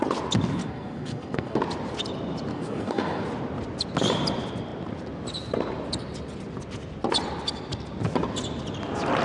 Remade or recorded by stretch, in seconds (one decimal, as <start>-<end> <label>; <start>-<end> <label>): 0.0-0.6 recorded; 0.6-1.6 remade; 1.6-2.5 recorded; 2.5-3.2 remade; 3.2-9.2 recorded